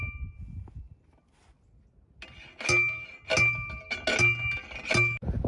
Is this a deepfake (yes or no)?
no